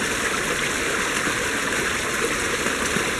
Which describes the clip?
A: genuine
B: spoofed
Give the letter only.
A